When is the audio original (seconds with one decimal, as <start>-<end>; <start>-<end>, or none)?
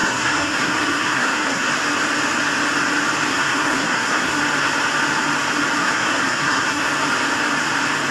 1.7-3.3; 4.4-5.8; 6.9-8.1